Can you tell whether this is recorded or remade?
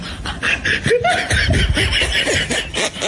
recorded